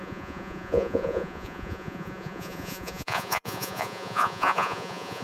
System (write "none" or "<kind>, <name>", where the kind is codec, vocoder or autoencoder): vocoder, Vocos